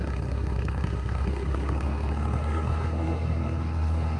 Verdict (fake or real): fake